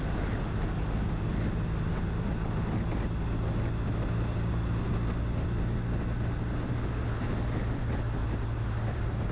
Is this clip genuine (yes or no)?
yes